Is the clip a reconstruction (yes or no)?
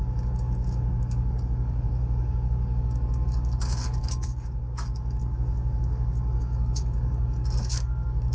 yes